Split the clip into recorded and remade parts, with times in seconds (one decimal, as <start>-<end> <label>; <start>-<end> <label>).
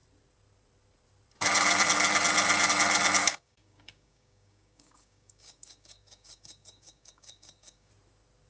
0.0-3.2 recorded; 3.2-7.9 remade; 7.9-8.5 recorded